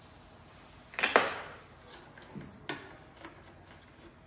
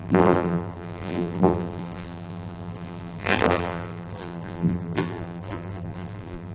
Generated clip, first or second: second